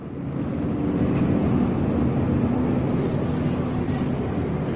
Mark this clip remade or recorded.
recorded